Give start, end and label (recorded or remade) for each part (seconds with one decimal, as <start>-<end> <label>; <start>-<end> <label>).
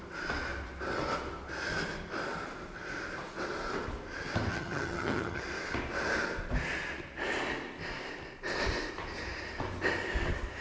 0.0-4.5 recorded; 4.5-5.4 remade; 5.4-10.6 recorded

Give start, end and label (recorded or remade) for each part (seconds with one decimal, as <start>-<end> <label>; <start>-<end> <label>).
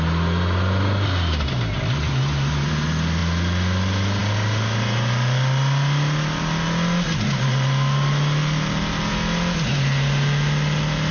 0.0-11.1 recorded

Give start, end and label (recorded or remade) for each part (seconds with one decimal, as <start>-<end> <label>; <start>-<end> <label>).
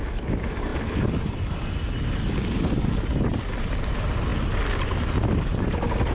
0.0-6.1 recorded